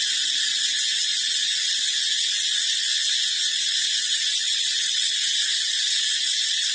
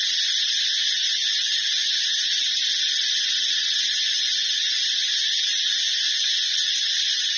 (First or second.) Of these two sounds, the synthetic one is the first